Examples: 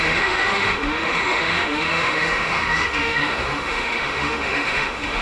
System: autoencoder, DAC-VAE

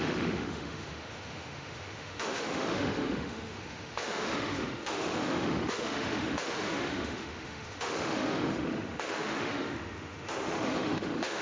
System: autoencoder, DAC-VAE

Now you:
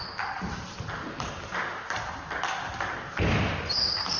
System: none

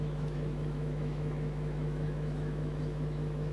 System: autoencoder, DAC-VAE